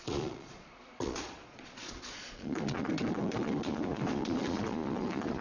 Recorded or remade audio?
remade